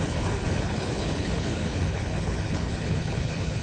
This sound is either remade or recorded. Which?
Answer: remade